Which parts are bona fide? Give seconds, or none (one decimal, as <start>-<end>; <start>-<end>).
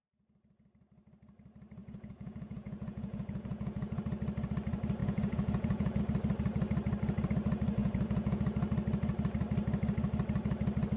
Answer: 0.0-1.8; 4.0-5.0; 6.0-7.8; 8.4-11.0